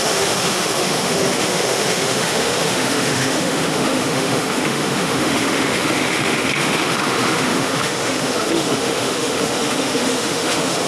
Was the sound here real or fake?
fake